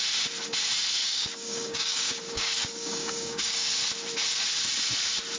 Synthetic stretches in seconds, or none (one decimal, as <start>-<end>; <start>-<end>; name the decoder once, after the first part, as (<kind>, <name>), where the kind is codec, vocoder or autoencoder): 1.0-3.7 (codec, DAC)